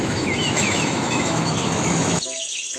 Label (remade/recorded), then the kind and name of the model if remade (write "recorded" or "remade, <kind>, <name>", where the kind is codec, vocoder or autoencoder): remade, autoencoder, DAC-VAE